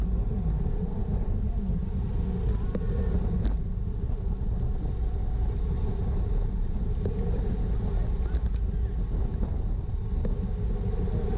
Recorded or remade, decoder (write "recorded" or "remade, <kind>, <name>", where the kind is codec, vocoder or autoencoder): recorded